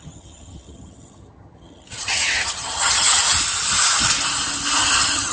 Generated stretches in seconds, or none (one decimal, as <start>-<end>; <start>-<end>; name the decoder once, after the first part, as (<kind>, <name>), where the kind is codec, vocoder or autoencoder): 0.0-3.2 (vocoder, HiFi-GAN); 4.8-5.3